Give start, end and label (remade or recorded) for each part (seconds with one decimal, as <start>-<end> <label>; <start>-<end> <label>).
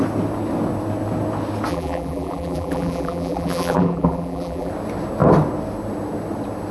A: 0.0-1.7 recorded; 1.7-4.7 remade; 4.7-6.7 recorded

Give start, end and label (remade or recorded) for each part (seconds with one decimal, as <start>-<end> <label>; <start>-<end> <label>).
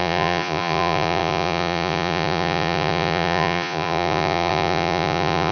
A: 0.0-5.5 remade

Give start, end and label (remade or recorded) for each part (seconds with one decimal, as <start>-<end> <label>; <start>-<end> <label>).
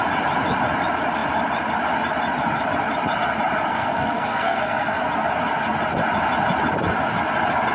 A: 0.0-3.7 recorded; 3.7-5.0 remade; 5.0-7.7 recorded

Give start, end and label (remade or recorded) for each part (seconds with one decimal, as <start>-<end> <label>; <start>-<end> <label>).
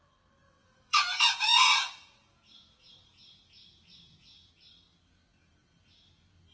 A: 0.0-0.6 recorded; 0.6-4.5 remade; 4.5-6.5 recorded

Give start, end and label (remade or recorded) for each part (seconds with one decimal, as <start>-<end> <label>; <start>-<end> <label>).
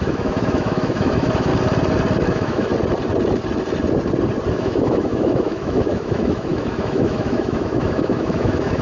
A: 0.0-1.5 remade; 1.5-2.3 recorded; 2.3-2.7 remade; 2.7-4.5 recorded; 4.5-8.8 remade